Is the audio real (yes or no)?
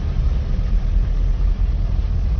yes